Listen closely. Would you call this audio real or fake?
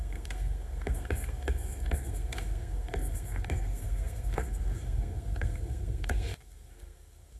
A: fake